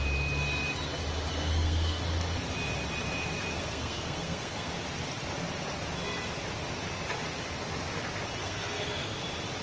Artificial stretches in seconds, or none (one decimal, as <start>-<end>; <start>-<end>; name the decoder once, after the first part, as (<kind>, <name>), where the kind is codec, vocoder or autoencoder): 1.3-2.0 (codec, SNAC); 3.6-4.7; 8.4-9.2

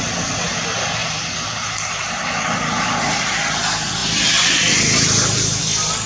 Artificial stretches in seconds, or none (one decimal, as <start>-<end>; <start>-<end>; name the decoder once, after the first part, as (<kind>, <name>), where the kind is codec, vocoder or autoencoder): 1.0-2.1 (vocoder, BigVGAN v2); 4.0-5.6

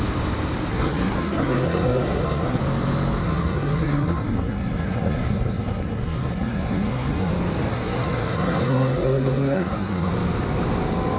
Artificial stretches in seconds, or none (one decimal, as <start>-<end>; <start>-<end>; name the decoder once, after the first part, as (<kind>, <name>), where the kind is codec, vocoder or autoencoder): 0.7-2.6 (codec, SNAC); 3.2-7.3; 7.7-10.1

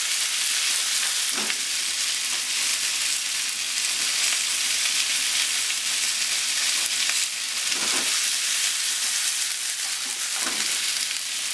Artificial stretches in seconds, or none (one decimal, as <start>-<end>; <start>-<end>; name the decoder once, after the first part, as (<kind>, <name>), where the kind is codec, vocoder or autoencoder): none

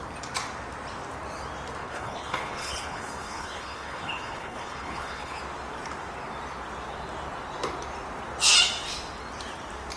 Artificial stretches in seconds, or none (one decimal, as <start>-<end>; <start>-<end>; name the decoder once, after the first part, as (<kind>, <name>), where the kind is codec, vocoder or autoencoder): 1.8-5.4 (codec, HILCodec)